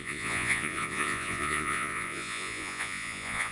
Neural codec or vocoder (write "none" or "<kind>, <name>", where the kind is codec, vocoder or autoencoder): vocoder, Vocos